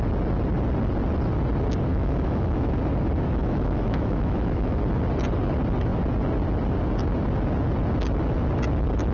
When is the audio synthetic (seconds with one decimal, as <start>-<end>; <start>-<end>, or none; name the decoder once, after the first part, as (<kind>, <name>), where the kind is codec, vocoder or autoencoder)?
1.9-2.8 (autoencoder, DAC-VAE); 3.4-4.8